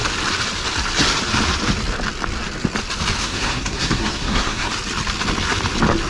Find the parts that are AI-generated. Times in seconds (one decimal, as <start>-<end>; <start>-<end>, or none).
3.2-4.7